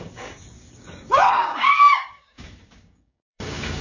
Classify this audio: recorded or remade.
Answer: remade